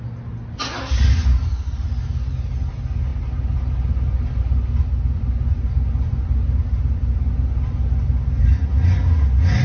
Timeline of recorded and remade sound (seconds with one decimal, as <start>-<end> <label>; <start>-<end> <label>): 0.0-9.6 recorded